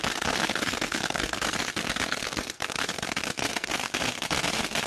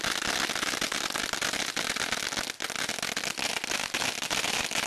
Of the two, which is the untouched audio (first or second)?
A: second